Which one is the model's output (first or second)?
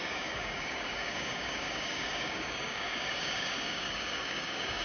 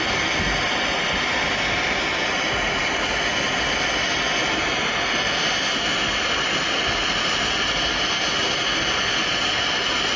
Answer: first